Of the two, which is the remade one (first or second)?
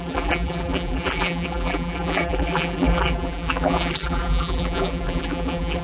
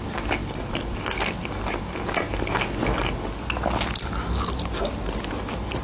first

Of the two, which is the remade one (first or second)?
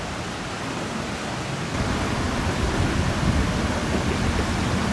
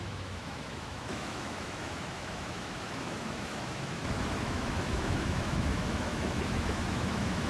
second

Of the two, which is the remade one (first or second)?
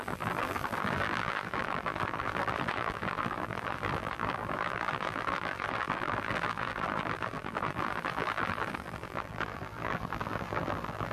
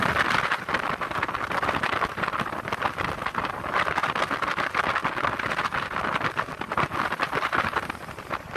first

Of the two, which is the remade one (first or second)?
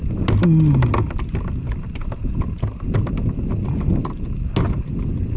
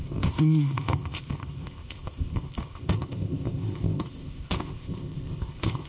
second